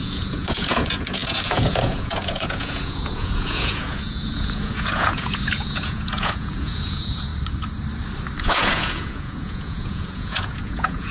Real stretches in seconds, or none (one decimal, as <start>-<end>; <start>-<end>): 7.3-8.4

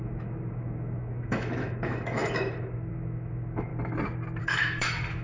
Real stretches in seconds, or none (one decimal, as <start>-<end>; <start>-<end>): 3.7-4.4